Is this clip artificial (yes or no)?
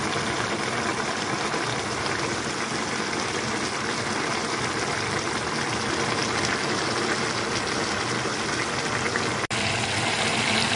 no